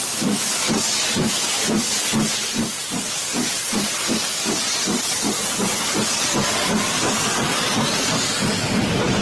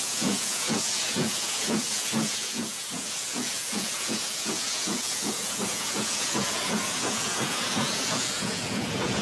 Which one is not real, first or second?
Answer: second